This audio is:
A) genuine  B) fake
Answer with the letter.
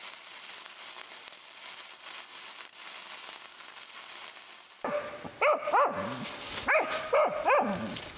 A